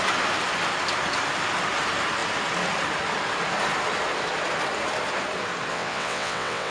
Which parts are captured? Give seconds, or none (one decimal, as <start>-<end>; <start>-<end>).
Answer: 0.0-5.7